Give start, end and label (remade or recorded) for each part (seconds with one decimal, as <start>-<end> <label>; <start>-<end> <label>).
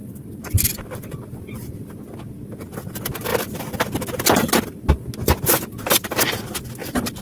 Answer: 0.0-2.0 remade; 2.0-3.3 recorded; 3.3-4.9 remade; 4.9-7.2 recorded